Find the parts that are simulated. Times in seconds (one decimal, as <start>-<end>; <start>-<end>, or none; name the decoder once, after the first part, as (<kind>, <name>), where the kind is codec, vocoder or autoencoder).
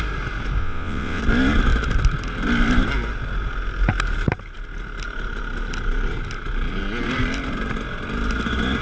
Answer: 0.6-1.2 (vocoder, WaveNeXt)